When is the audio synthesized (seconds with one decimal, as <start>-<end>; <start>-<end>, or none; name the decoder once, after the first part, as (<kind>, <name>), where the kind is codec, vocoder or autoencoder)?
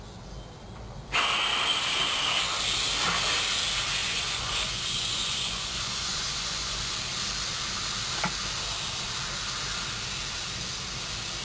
4.0-6.9 (vocoder, Vocos)